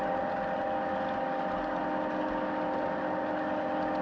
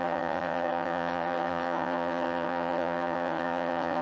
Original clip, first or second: first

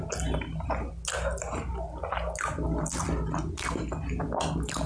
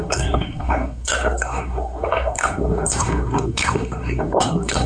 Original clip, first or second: first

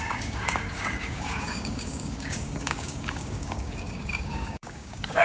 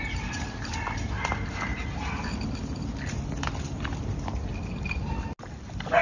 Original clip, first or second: second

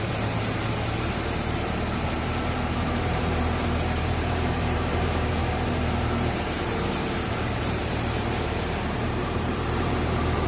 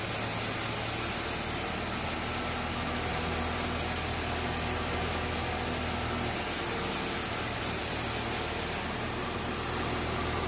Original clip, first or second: second